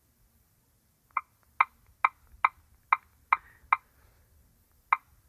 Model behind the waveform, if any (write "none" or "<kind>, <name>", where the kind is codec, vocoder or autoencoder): none